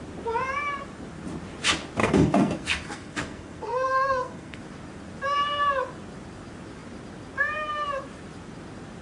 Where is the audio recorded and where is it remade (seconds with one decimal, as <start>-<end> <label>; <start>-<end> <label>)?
0.0-2.0 recorded; 2.0-4.6 remade; 4.6-9.0 recorded